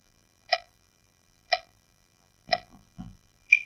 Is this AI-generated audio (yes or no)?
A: yes